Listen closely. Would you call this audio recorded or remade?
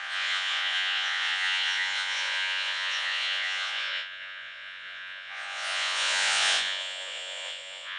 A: remade